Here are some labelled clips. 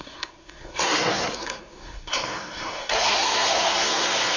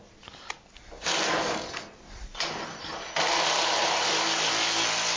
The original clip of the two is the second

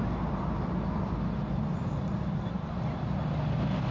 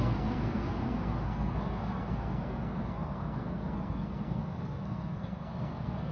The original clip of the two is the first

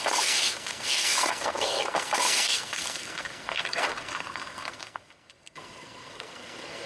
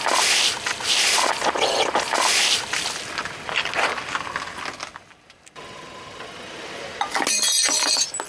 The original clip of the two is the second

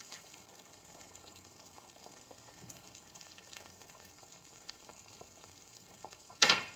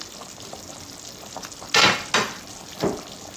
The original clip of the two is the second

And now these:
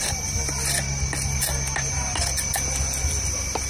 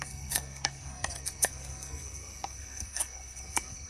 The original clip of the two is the first